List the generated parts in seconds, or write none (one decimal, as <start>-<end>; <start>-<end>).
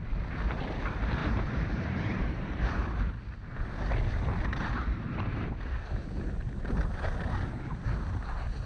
1.2-3.1; 4.5-5.6